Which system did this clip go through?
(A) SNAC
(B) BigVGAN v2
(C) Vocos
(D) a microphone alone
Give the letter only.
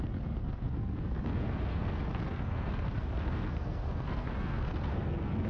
A